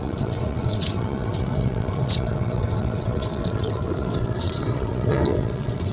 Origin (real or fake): fake